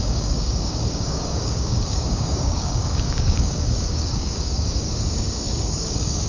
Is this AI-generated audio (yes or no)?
yes